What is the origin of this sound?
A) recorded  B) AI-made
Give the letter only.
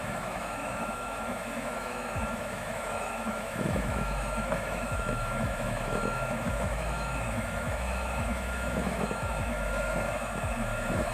B